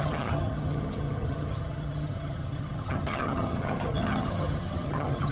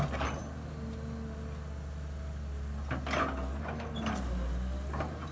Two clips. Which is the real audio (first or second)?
second